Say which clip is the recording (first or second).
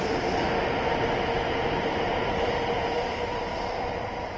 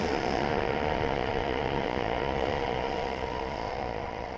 first